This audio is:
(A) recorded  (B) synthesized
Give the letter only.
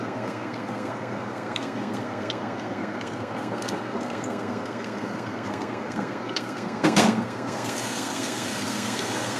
B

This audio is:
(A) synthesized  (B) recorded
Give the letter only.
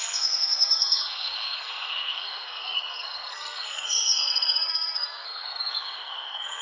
A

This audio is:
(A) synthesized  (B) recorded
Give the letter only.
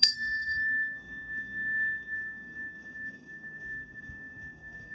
A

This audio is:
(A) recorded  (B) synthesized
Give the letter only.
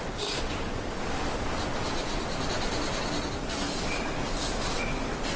A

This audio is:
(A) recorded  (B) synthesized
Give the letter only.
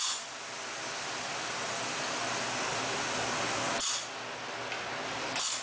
A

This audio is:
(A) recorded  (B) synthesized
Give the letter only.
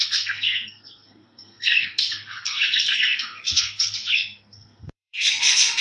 B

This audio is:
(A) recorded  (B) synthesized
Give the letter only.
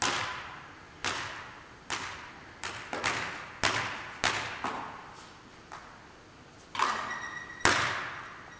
A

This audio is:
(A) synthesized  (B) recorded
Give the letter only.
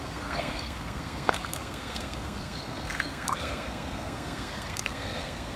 A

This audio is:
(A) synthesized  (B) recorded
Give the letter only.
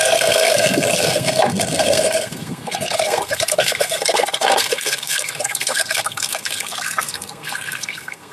A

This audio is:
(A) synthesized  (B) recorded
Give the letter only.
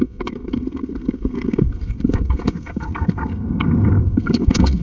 A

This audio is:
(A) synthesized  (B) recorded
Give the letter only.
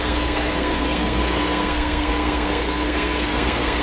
A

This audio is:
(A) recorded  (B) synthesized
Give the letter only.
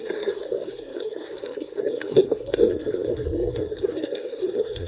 B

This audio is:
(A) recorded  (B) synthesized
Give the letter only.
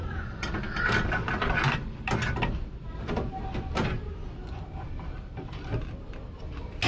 A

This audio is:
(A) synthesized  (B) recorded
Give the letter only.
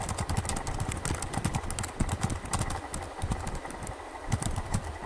B